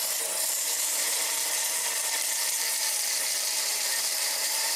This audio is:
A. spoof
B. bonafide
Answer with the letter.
A